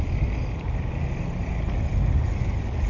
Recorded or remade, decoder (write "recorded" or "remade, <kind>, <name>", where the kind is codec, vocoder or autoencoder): recorded